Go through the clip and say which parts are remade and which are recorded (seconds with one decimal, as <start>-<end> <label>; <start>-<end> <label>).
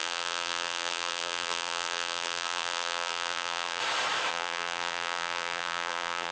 0.0-3.8 remade; 3.8-4.3 recorded; 4.3-6.3 remade